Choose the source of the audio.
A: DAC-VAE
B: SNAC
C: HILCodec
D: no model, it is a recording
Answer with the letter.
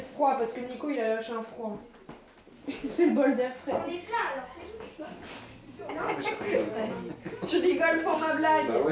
D